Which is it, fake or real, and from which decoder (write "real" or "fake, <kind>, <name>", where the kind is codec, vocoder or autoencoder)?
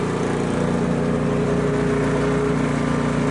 real